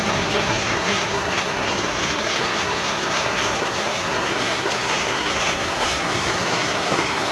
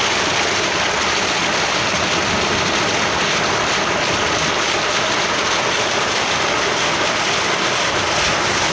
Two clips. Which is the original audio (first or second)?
second